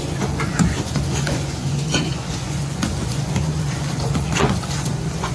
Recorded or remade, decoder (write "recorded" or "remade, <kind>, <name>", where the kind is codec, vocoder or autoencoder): remade, vocoder, Vocos